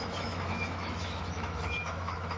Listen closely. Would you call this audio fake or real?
fake